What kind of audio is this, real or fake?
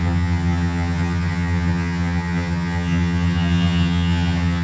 fake